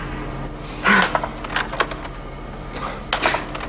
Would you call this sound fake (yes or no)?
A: no